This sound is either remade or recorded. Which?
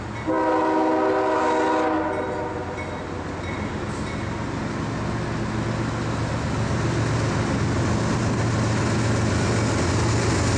recorded